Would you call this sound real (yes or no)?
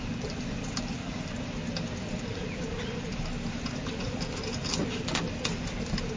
yes